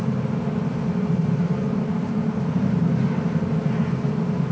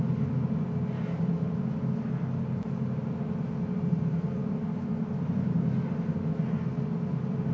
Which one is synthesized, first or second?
first